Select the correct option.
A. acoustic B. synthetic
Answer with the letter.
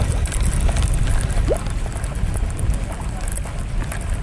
A